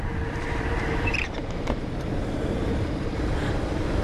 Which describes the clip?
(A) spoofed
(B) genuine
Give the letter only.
A